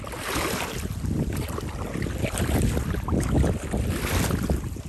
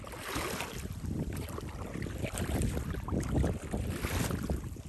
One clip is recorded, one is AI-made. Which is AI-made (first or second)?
second